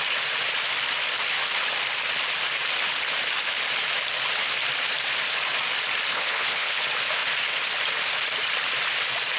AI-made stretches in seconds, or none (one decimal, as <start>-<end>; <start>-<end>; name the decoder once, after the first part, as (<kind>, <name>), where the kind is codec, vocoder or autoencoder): 6.1-6.8 (codec, HILCodec)